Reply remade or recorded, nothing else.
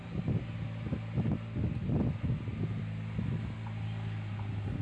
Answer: recorded